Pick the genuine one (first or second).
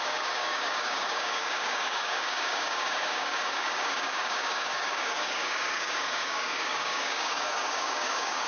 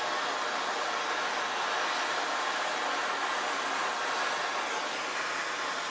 second